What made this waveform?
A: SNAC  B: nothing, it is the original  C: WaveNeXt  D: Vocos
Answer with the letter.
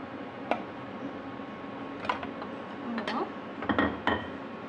B